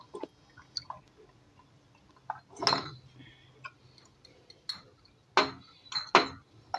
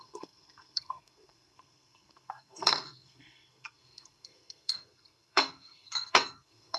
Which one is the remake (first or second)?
second